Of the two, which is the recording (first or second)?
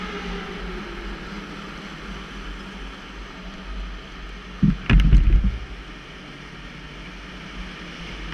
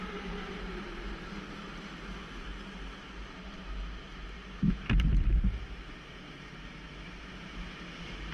first